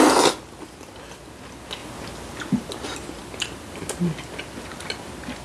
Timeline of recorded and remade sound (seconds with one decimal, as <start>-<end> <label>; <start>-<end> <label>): 0.0-5.4 recorded